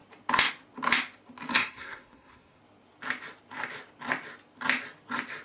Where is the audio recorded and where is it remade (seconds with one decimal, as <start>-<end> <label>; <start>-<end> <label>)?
0.0-1.5 recorded; 1.5-2.6 remade; 2.6-5.4 recorded